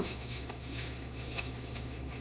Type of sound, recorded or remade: remade